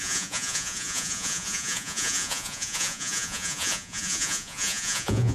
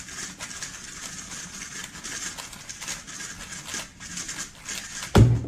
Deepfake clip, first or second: first